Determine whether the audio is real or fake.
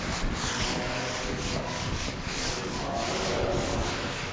fake